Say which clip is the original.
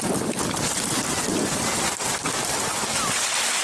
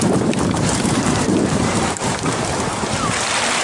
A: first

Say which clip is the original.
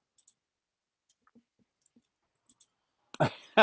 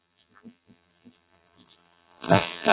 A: first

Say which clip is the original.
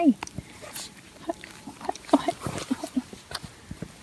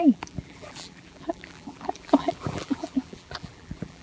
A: first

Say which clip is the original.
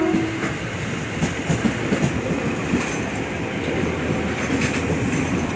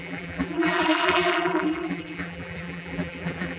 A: first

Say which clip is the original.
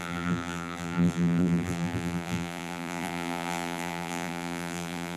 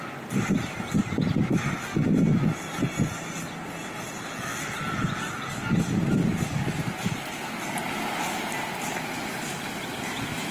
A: second